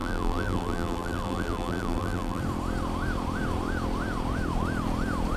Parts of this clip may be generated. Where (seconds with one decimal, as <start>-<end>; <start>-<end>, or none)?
0.0-2.4